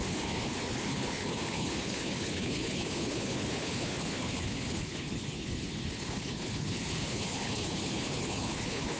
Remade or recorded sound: remade